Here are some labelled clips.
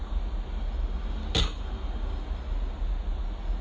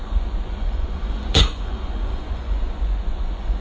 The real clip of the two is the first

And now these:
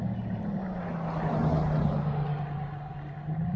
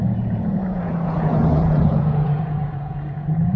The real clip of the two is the first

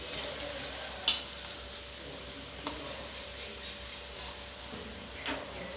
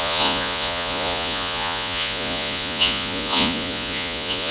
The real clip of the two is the first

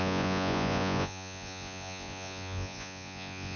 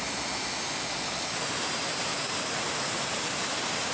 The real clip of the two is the second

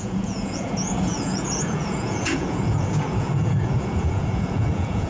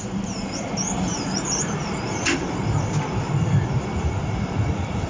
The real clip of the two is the second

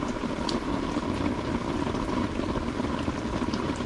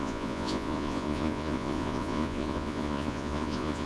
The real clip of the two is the first